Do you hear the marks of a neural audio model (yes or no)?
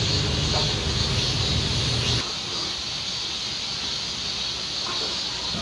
no